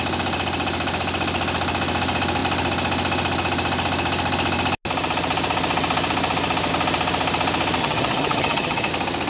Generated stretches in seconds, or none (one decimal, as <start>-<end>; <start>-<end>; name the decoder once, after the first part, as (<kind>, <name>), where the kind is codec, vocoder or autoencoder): 7.8-8.9 (vocoder, HiFi-GAN)